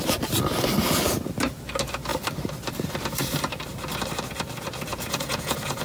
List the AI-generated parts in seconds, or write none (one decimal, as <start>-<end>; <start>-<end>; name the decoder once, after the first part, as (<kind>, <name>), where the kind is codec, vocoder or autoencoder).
4.9-5.8 (vocoder, Vocos)